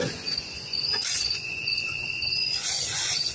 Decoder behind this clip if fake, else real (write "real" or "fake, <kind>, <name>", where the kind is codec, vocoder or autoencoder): fake, vocoder, Vocos